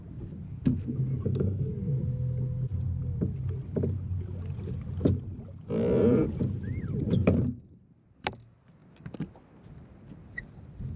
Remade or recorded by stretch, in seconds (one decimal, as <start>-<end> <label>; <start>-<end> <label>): 0.0-1.2 recorded; 1.2-1.7 remade; 1.7-11.0 recorded